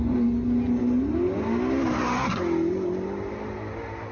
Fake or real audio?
real